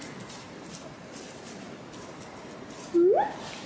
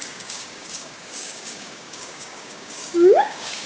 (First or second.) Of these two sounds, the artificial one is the second